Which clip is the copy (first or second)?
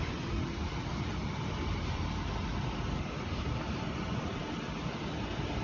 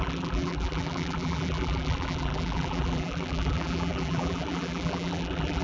second